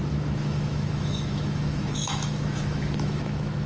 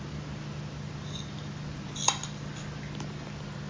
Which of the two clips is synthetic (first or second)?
first